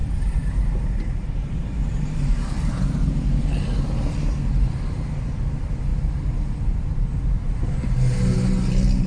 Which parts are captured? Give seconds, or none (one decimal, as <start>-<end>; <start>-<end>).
2.4-9.1